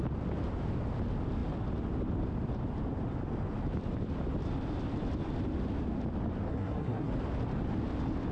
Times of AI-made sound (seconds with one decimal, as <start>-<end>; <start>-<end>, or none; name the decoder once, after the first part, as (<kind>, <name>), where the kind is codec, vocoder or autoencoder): 6.5-7.1 (codec, SNAC)